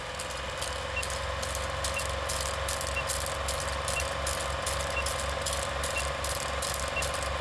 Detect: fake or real real